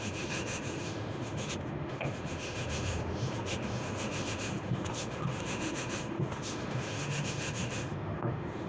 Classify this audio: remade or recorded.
remade